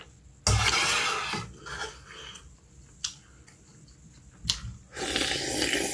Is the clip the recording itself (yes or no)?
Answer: yes